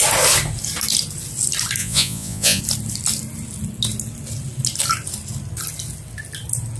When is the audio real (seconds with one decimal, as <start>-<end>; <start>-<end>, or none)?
0.0-1.8; 2.6-6.8